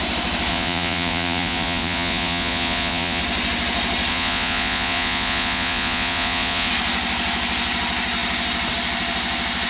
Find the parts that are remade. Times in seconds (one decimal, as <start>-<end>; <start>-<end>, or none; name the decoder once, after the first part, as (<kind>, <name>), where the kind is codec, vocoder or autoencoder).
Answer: 0.5-3.2 (vocoder, Vocos); 4.1-6.7

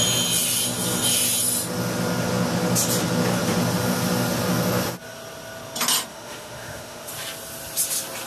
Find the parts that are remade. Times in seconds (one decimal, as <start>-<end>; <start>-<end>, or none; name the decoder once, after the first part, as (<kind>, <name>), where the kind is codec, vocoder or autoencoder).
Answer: 6.1-7.1 (autoencoder, DAC-VAE)

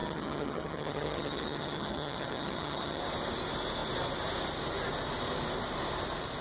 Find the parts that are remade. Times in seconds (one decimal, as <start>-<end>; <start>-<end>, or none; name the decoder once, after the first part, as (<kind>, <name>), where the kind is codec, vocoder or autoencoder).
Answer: 0.0-3.0 (vocoder, HiFi-GAN)

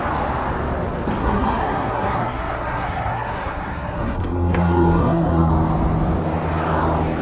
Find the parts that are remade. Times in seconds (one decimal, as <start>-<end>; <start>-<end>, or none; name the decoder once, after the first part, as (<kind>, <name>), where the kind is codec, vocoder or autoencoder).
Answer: 1.2-5.5 (codec, SNAC)